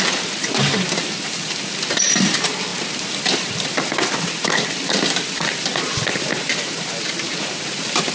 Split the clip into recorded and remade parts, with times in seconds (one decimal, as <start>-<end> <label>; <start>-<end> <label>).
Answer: 0.0-8.1 recorded